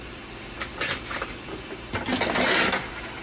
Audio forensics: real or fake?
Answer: real